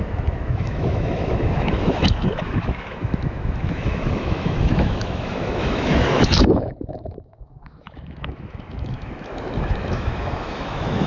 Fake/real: fake